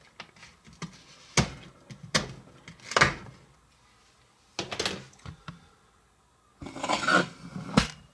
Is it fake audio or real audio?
real